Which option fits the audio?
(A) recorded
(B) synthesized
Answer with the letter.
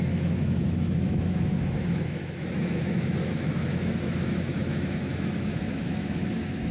B